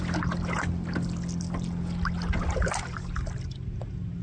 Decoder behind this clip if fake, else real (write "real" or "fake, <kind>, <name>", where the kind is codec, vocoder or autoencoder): real